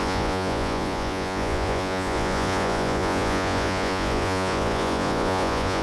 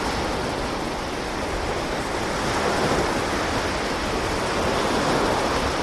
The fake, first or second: first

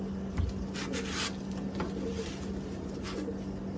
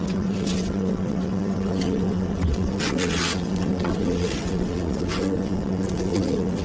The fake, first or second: second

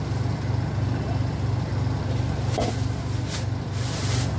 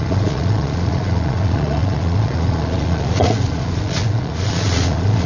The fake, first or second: second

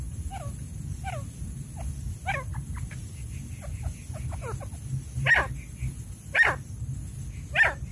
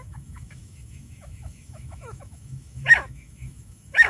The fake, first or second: second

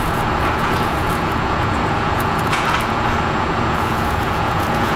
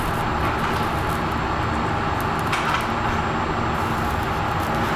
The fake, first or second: first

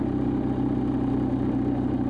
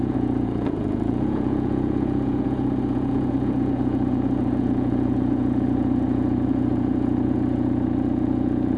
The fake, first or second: second